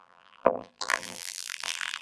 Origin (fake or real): fake